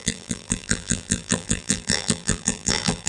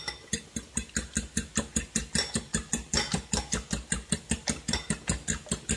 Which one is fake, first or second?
first